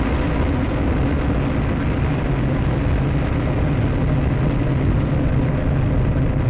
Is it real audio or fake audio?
real